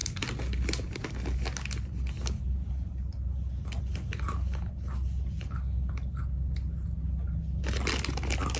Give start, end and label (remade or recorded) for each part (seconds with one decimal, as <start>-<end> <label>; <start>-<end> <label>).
0.0-8.6 recorded